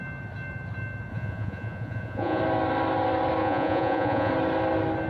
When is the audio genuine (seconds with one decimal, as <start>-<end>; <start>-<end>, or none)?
0.0-1.1; 2.4-3.4; 4.3-5.1